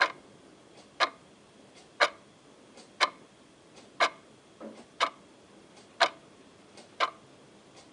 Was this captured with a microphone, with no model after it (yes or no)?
yes